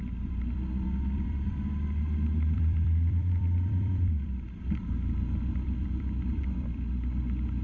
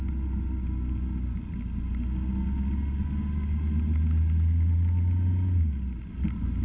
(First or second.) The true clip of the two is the second